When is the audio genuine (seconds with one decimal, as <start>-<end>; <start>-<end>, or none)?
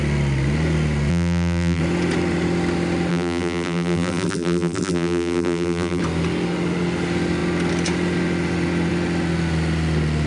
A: 0.0-1.1; 1.8-3.1; 6.0-10.3